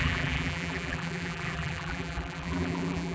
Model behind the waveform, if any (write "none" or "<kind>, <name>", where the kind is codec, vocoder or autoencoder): vocoder, BigVGAN v2